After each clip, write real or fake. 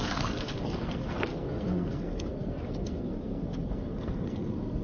fake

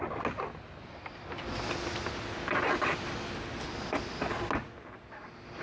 real